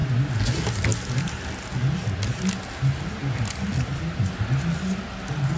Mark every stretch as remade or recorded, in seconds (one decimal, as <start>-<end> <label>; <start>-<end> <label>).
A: 0.0-5.6 recorded